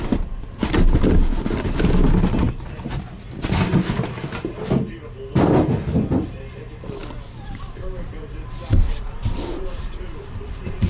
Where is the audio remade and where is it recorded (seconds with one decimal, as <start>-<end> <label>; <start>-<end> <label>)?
0.0-7.0 recorded; 7.0-10.9 remade